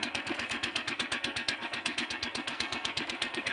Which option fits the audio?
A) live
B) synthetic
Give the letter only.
B